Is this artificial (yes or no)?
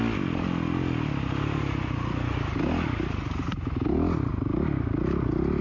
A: no